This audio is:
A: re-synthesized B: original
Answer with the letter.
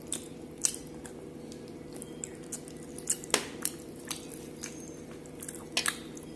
B